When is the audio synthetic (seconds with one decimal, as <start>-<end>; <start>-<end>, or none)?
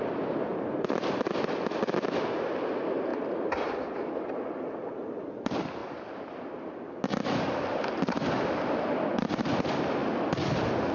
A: none